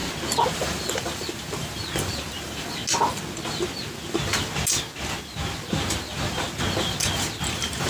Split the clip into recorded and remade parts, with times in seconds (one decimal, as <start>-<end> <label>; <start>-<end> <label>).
0.0-0.5 recorded; 0.5-2.8 remade; 2.8-7.5 recorded; 7.5-7.9 remade